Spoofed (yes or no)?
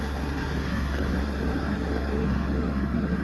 yes